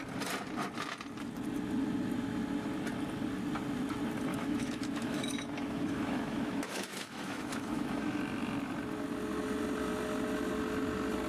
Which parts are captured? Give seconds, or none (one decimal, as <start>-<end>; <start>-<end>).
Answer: 0.0-4.3; 8.2-11.3